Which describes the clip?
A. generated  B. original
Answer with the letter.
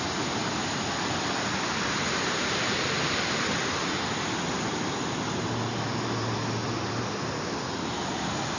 B